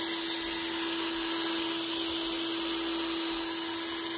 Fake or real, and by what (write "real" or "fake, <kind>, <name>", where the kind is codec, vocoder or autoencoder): real